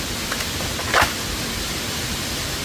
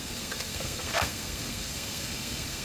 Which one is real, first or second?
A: first